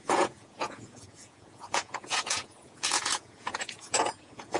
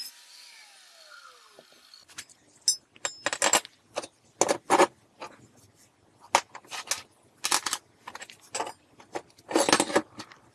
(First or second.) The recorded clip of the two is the second